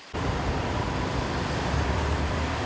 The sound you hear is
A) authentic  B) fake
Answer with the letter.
B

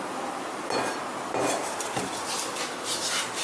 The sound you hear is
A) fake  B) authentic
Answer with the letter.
B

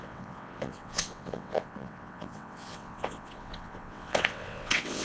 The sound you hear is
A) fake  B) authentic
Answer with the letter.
A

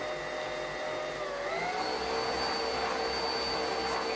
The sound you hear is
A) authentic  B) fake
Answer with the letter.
A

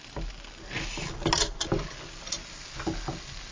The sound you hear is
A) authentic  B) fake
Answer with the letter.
A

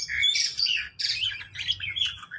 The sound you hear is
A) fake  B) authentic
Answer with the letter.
B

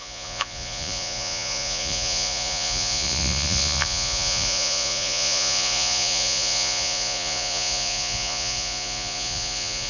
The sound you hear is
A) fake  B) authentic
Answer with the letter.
A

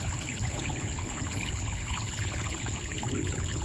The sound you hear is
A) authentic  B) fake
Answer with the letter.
B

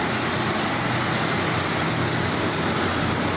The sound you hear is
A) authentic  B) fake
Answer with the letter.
A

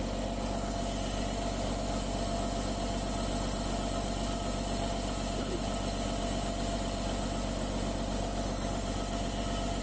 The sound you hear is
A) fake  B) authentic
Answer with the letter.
B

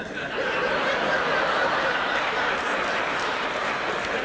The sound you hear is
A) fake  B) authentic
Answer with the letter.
B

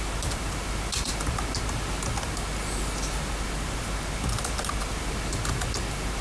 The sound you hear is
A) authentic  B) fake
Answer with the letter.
A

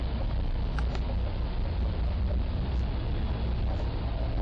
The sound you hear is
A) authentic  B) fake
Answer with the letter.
A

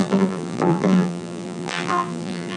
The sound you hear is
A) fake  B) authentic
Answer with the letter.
A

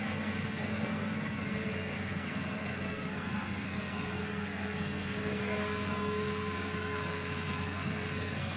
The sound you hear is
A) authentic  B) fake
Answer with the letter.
B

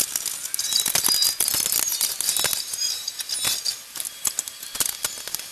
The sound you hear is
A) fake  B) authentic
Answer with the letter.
B